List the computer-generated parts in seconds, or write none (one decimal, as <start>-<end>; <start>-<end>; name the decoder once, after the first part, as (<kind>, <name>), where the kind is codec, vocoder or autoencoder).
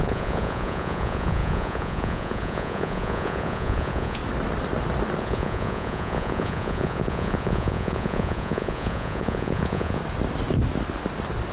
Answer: 0.0-4.2 (vocoder, Vocos); 5.2-10.0